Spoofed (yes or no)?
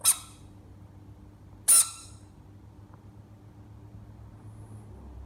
no